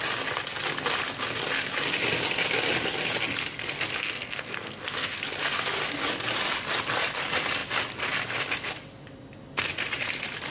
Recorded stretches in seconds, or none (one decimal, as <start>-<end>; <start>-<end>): 0.0-4.0; 5.2-10.5